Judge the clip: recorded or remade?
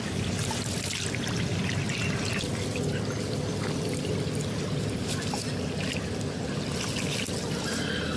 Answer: recorded